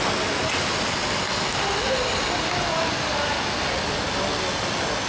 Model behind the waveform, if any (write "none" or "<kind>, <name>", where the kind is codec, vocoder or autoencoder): none